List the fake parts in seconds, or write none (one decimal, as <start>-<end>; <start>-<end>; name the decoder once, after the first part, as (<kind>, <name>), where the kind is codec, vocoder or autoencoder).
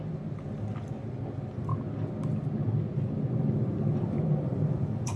0.0-1.7 (vocoder, BigVGAN v2); 3.4-5.2